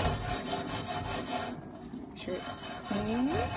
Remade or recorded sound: recorded